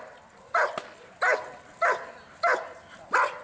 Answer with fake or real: real